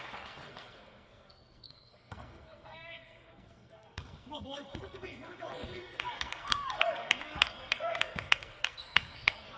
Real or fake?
fake